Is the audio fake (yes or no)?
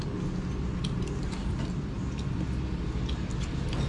no